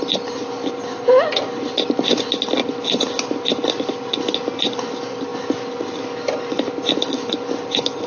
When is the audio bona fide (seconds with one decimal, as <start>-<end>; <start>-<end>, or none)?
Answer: 0.0-8.1